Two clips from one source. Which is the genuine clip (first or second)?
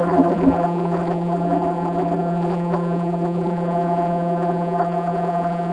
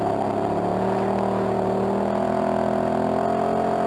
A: second